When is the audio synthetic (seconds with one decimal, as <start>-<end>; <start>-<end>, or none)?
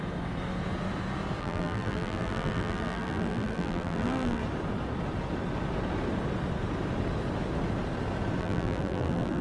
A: 1.4-4.4; 8.4-9.4